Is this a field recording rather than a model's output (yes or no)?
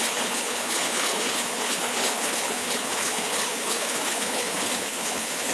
no